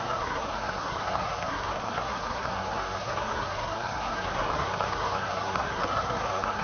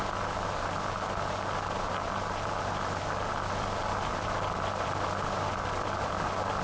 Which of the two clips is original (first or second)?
second